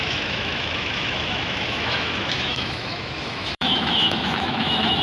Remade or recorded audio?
remade